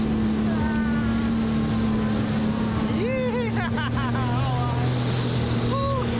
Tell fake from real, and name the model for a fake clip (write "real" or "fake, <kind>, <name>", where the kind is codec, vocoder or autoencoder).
real